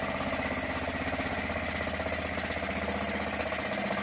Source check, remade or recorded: recorded